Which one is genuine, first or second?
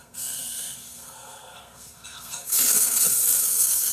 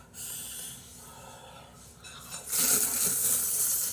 second